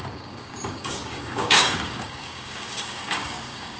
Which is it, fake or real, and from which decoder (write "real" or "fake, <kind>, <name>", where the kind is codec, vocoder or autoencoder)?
fake, codec, DAC